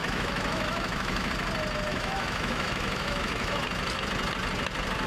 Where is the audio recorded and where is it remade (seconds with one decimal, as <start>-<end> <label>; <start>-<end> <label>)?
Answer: 0.0-1.3 remade; 1.3-1.9 recorded; 1.9-3.6 remade; 3.6-5.1 recorded